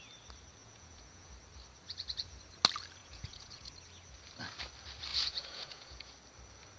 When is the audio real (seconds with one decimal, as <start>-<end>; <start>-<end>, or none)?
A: 0.0-0.6; 1.3-3.0; 3.7-5.1; 6.1-6.8